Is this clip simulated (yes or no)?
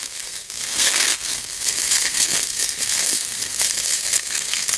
yes